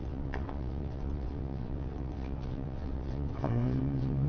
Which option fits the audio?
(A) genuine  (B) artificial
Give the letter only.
B